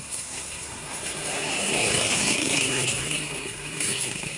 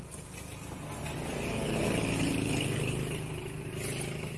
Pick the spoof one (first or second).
first